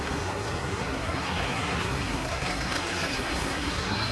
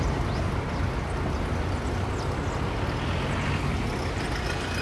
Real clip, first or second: second